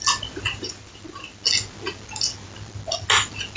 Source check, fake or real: real